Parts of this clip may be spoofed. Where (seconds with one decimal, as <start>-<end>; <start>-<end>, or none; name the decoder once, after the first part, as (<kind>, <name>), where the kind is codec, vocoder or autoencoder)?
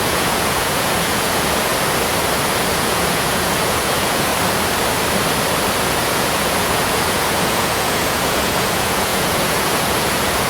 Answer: 0.0-1.7 (vocoder, Vocos); 2.6-4.3; 5.8-10.5